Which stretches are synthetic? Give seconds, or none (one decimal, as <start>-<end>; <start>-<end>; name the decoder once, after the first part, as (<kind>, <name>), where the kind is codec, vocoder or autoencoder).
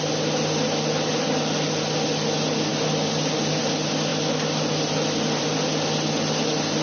none